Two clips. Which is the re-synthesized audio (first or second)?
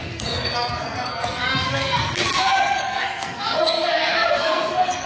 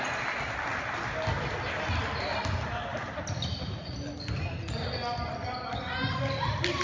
first